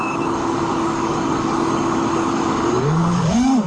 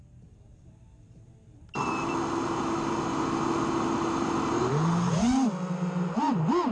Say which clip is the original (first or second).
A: second